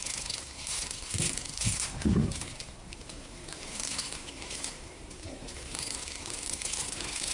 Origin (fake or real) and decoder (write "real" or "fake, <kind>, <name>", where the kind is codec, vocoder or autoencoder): fake, codec, SNAC